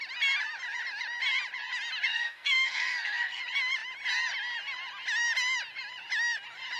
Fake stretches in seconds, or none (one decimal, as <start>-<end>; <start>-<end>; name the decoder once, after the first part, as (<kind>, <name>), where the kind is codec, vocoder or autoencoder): 2.1-3.4 (codec, SNAC)